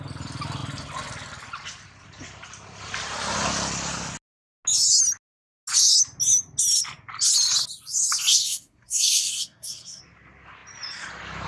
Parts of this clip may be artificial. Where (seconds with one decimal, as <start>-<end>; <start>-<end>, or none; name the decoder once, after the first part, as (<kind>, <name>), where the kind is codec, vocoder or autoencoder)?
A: 8.3-10.0 (codec, SNAC)